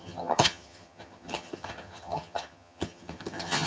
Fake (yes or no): yes